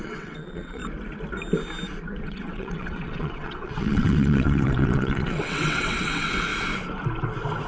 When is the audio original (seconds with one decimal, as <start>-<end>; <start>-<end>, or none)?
0.8-2.2; 6.5-7.7